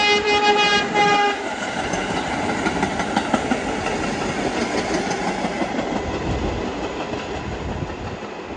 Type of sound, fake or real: real